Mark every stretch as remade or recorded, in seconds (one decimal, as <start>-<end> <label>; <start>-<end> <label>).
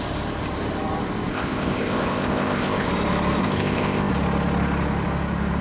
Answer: 0.0-1.3 recorded; 1.3-2.9 remade; 2.9-3.4 recorded; 3.4-4.1 remade; 4.1-5.6 recorded